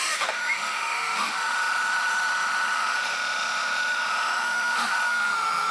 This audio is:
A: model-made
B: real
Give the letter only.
A